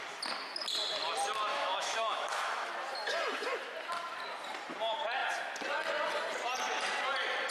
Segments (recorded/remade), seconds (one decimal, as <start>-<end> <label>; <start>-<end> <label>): 0.0-1.5 recorded; 1.5-2.7 remade; 2.7-7.5 recorded